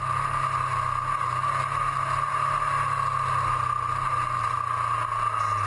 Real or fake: real